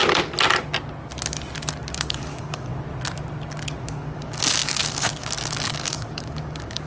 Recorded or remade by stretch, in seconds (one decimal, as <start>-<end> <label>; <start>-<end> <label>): 0.0-1.9 recorded; 1.9-2.7 remade; 2.7-3.8 recorded; 3.8-6.9 remade